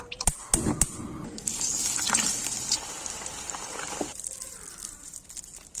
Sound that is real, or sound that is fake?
real